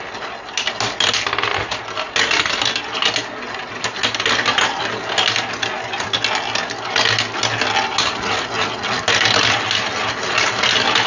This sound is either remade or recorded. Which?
recorded